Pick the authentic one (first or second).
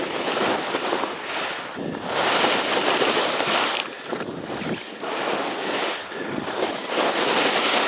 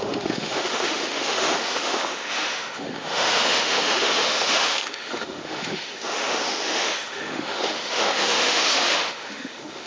first